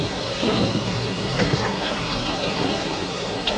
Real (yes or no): no